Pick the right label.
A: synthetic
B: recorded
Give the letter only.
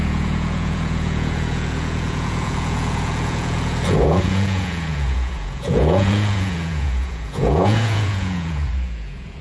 A